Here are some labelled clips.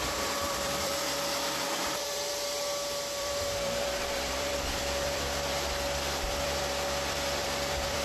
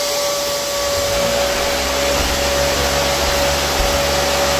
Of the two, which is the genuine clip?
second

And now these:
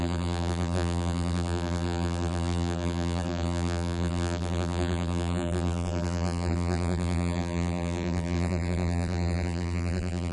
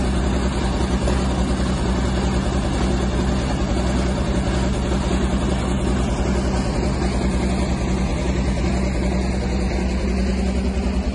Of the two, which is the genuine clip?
second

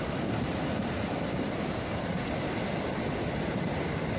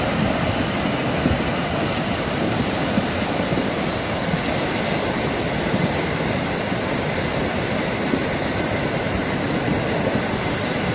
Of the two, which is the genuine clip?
second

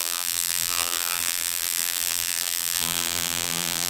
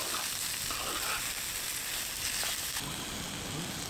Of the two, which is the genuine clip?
second